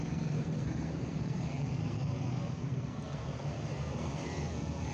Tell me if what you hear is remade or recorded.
remade